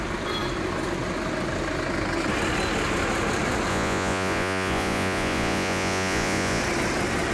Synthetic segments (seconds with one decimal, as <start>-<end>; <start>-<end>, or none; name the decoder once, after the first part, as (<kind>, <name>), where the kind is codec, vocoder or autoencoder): 3.7-6.6 (vocoder, Vocos)